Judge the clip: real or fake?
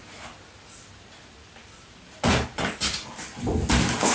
real